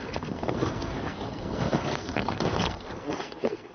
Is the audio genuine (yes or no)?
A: no